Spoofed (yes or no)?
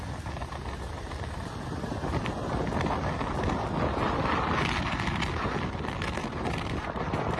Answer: no